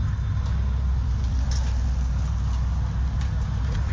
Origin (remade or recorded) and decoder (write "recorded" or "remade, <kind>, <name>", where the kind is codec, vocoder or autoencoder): recorded